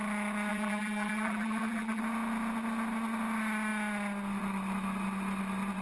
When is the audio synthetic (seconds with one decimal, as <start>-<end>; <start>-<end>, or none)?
0.5-2.0

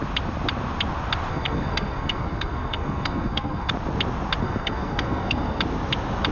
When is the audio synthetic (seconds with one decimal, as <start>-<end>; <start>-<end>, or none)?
1.3-3.7; 4.4-5.6

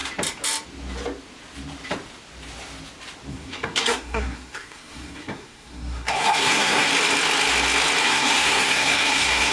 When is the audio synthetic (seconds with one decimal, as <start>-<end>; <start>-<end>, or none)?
3.3-6.9; 8.0-9.5

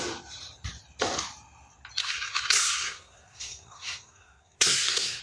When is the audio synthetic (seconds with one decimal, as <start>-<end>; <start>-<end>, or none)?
2.0-5.2

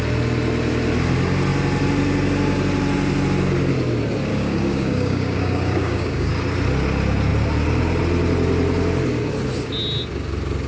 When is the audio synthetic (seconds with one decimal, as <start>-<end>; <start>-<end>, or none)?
4.3-6.3